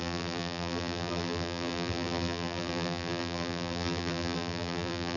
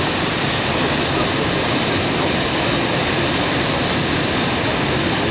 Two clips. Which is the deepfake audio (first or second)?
first